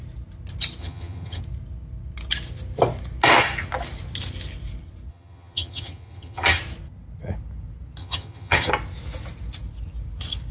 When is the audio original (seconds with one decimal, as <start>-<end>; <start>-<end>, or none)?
0.0-0.8; 1.4-5.1; 6.6-8.0; 8.7-10.5